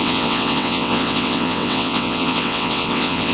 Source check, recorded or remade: remade